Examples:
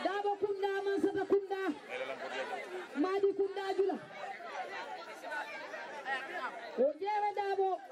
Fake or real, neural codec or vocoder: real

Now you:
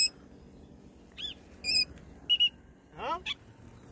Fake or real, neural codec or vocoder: real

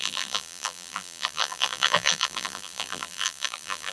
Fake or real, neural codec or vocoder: fake, vocoder, BigVGAN v2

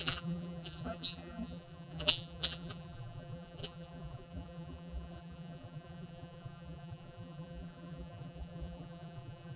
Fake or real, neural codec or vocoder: fake, vocoder, BigVGAN v2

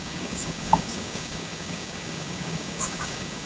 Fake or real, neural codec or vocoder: fake, codec, DAC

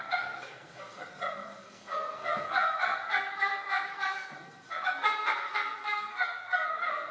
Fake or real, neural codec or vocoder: fake, codec, SNAC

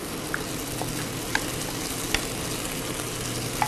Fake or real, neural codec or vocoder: real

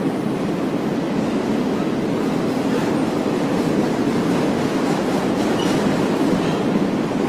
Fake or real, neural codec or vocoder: real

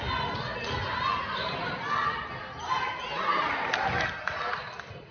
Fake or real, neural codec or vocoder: real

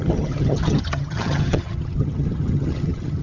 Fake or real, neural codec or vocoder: fake, vocoder, HiFi-GAN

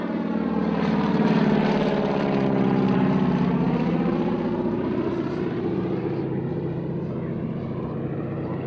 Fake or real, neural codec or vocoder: fake, vocoder, BigVGAN v2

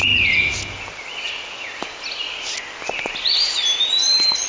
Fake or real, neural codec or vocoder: real